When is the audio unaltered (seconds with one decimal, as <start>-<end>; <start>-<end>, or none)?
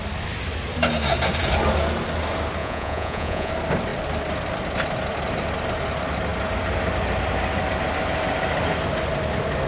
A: 0.0-2.6; 3.5-9.7